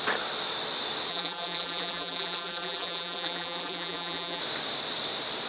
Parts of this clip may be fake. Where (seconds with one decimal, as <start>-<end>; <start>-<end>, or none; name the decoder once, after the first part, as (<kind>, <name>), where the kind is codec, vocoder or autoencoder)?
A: 1.1-4.4 (vocoder, BigVGAN v2)